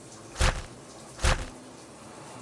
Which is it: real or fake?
real